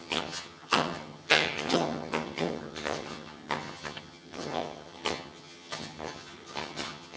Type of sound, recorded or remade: remade